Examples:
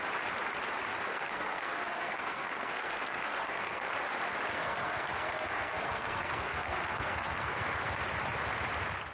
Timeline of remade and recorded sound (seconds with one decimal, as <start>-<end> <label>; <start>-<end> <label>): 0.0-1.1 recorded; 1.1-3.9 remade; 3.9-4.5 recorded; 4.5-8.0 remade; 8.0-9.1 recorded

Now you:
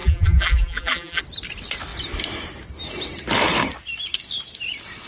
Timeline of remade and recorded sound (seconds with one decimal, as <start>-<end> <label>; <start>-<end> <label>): 0.0-1.2 remade; 1.2-5.1 recorded

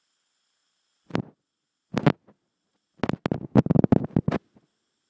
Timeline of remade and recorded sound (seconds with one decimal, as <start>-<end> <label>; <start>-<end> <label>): 0.0-5.1 recorded

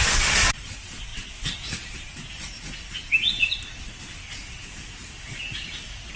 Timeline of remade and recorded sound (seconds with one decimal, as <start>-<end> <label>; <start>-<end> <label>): 0.0-6.2 recorded

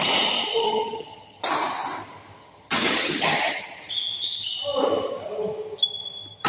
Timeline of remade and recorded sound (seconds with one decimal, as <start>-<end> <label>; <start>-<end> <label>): 0.0-0.5 recorded; 0.5-1.4 remade; 1.4-2.4 recorded; 2.4-3.9 remade; 3.9-6.5 recorded

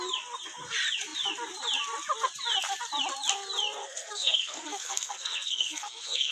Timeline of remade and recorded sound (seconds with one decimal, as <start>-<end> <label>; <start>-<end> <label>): 0.0-3.8 recorded; 3.8-6.3 remade

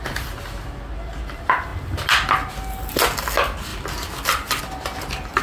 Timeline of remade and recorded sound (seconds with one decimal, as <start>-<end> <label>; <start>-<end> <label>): 0.0-5.4 recorded

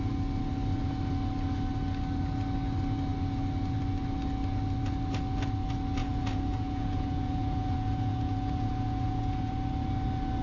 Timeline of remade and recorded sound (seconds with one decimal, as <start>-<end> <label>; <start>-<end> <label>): 0.0-6.0 recorded; 6.0-9.5 remade; 9.5-10.4 recorded